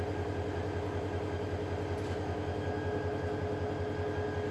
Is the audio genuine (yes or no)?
yes